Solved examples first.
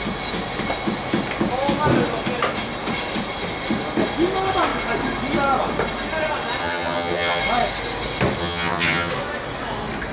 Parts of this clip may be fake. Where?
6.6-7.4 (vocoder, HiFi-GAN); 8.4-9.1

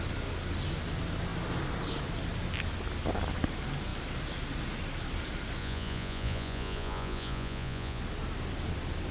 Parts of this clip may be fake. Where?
5.6-8.0 (vocoder, Vocos)

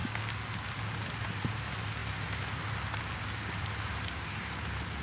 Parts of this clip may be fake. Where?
0.0-0.8 (codec, DAC)